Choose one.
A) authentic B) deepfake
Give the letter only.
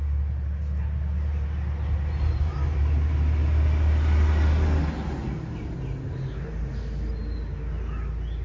A